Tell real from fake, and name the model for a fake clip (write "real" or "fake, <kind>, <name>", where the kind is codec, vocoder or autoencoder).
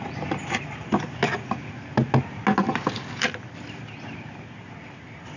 real